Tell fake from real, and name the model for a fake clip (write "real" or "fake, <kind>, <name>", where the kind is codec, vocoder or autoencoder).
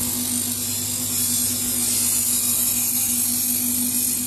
real